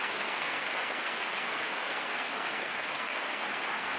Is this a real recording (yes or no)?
no